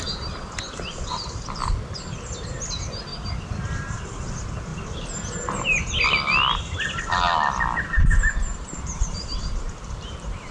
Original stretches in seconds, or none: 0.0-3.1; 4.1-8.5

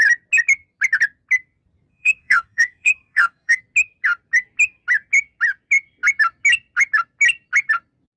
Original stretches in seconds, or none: 0.0-1.9; 3.6-8.2

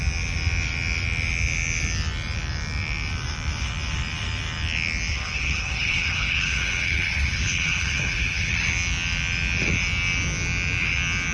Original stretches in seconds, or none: 0.0-5.1; 8.5-11.3

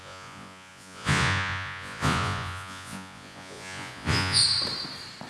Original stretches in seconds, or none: 4.4-5.3

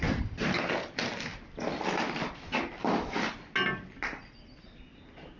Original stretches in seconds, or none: 0.0-5.4